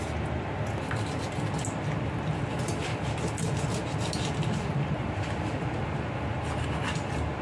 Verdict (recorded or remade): recorded